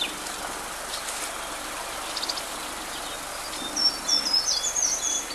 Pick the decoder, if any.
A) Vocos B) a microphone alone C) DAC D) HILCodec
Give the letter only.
B